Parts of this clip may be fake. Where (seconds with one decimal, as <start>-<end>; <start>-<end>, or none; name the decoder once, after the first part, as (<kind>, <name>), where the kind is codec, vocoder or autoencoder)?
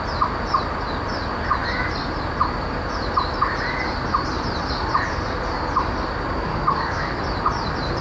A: 6.5-7.2 (codec, DAC)